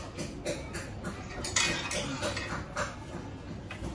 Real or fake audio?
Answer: real